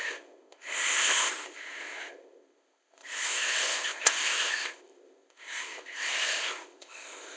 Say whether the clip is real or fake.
fake